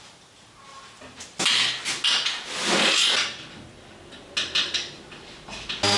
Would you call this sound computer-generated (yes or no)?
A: no